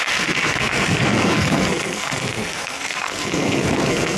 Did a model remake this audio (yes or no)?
yes